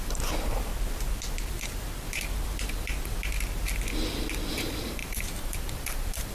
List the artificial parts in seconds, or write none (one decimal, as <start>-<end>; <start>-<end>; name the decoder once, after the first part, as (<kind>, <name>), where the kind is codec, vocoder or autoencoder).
0.0-0.7 (vocoder, BigVGAN v2); 4.5-6.3